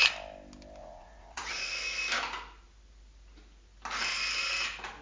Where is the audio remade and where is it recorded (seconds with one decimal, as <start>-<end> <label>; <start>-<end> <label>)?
0.0-0.8 recorded; 0.8-1.7 remade; 1.7-5.0 recorded